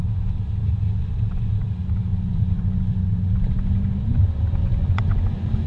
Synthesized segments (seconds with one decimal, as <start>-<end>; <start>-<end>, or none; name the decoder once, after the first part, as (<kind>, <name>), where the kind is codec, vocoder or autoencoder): 2.1-3.3 (vocoder, Vocos); 4.6-5.7